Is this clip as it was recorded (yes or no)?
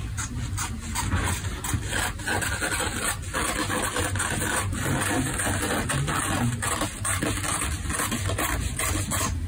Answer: yes